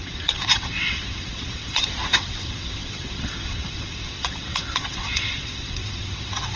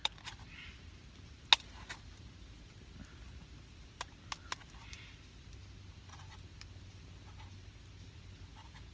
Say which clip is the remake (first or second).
first